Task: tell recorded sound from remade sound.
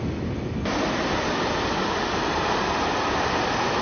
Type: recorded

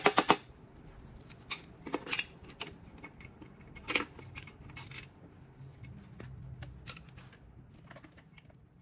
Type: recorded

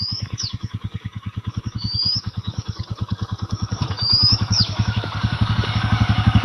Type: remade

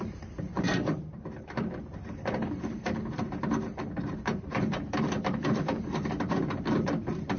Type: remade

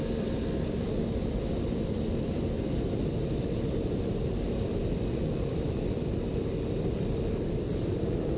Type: remade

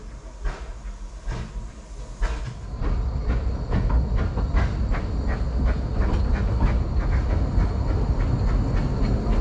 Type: recorded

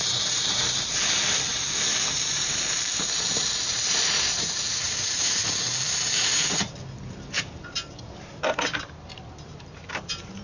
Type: remade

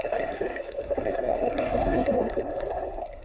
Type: remade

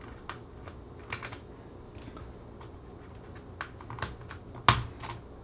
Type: recorded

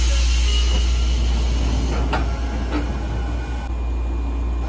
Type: recorded